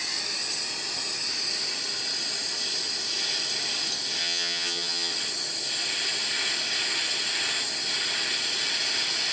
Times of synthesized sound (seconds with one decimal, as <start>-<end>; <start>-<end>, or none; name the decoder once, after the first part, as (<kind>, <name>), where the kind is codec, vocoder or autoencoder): 4.2-5.1 (vocoder, HiFi-GAN)